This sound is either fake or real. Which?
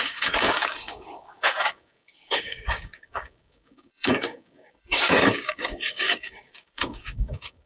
fake